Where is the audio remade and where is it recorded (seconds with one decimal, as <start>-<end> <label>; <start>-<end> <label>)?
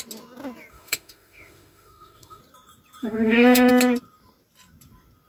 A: 0.0-0.7 recorded; 0.7-2.4 remade; 2.4-3.0 recorded; 3.0-3.7 remade; 3.7-5.3 recorded